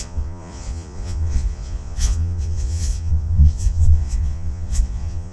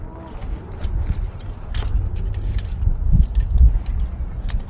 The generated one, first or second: first